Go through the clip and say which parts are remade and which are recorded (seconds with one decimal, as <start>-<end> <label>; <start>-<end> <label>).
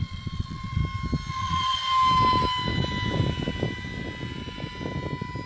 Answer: 0.0-0.8 remade; 0.8-1.3 recorded; 1.3-1.9 remade; 1.9-5.5 recorded